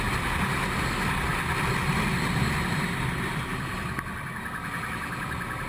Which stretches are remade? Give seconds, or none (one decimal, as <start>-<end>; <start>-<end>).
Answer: none